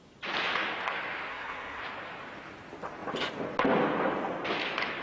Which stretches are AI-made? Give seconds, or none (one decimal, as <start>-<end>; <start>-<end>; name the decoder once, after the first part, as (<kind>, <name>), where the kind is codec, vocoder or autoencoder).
1.3-1.8 (codec, SNAC)